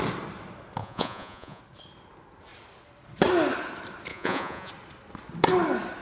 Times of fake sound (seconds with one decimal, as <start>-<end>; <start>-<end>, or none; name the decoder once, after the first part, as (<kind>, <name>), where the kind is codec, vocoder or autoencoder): 0.8-1.6 (vocoder, Vocos); 4.1-4.7